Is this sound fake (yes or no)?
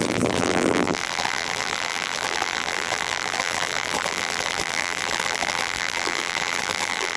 yes